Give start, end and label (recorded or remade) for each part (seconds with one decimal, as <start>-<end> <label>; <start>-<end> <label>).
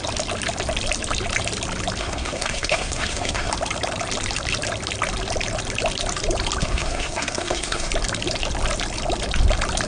0.0-2.0 recorded; 2.0-3.5 remade; 3.5-6.6 recorded; 6.6-7.9 remade; 7.9-9.9 recorded